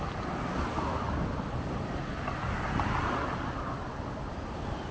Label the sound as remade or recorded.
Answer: recorded